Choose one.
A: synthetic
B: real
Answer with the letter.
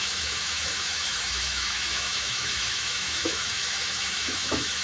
A